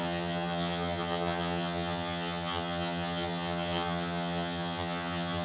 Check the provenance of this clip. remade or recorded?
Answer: remade